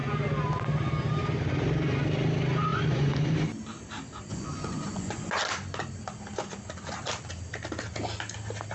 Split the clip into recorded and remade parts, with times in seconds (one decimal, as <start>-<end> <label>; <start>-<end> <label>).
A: 0.0-2.7 recorded; 2.7-3.3 remade; 3.3-4.3 recorded; 4.3-5.3 remade; 5.3-8.7 recorded

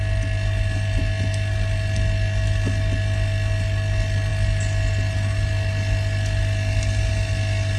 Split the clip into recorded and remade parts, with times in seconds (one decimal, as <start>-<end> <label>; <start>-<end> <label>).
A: 0.0-7.8 recorded